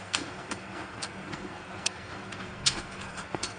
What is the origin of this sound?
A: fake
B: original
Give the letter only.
A